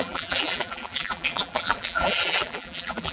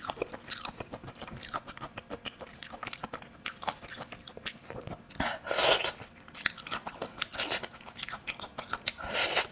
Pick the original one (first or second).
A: second